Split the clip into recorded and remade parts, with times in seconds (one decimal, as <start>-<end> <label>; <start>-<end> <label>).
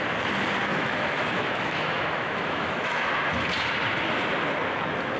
0.0-0.7 recorded; 0.7-3.3 remade; 3.3-5.2 recorded